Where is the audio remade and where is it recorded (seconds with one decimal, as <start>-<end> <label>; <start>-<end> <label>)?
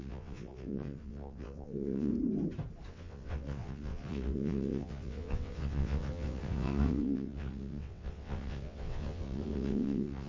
0.0-2.1 remade; 2.1-2.9 recorded; 2.9-10.3 remade